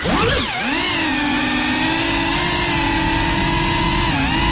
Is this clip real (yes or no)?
yes